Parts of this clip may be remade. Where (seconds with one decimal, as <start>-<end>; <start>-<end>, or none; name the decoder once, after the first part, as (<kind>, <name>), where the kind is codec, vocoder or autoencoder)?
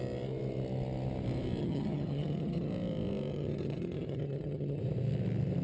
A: 1.6-2.7 (vocoder, HiFi-GAN); 3.3-4.8